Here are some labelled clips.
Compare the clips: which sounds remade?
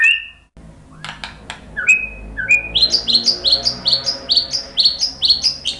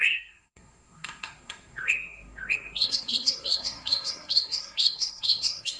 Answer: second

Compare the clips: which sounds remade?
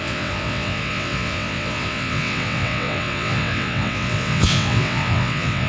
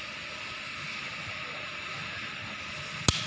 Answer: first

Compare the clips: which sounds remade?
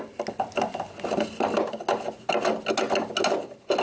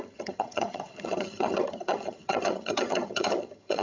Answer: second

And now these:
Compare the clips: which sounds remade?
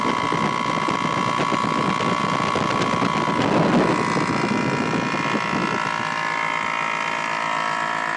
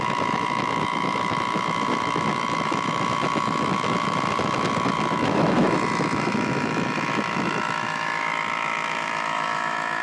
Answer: second